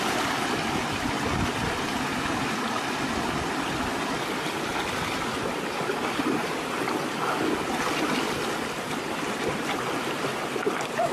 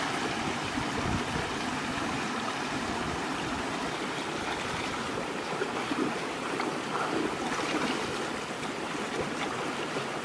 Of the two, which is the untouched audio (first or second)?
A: first